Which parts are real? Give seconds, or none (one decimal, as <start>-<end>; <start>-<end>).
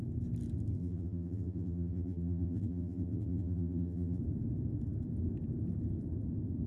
0.0-0.8; 4.2-6.7